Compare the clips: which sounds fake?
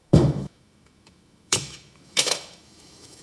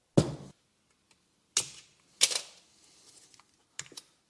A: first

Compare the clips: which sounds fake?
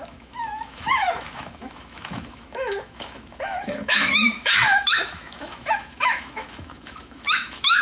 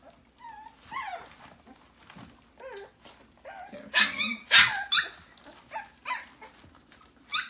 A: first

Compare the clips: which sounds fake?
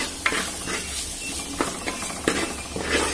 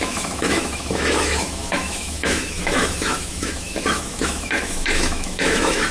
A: second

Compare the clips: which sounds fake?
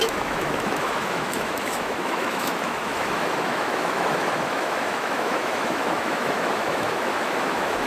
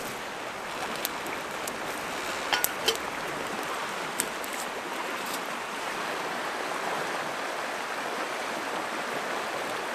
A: first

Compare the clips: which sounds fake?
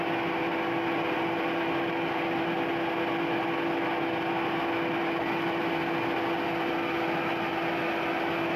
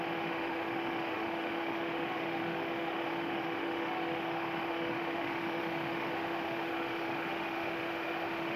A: second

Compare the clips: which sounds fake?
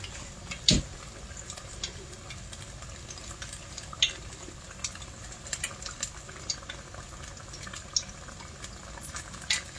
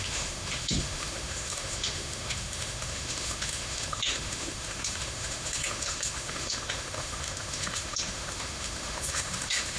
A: second